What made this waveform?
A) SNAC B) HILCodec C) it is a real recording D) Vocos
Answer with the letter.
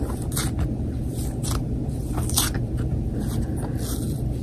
C